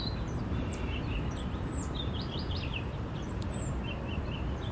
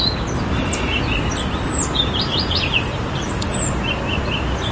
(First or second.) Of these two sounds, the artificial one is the first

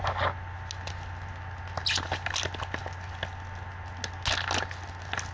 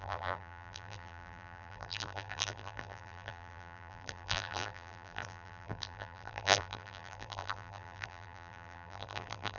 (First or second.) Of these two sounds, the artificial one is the second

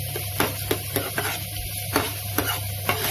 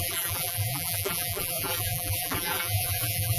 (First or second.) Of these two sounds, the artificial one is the second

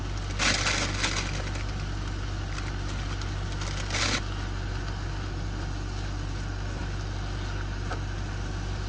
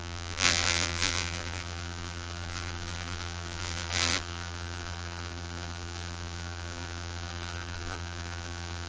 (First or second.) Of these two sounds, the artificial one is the second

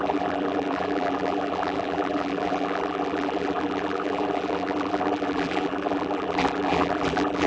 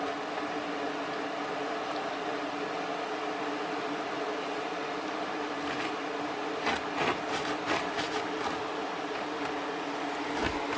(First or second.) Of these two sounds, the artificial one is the first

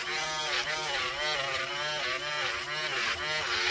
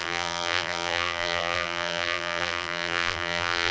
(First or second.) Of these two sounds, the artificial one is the second